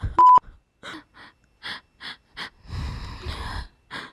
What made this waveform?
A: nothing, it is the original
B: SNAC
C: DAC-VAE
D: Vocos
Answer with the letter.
A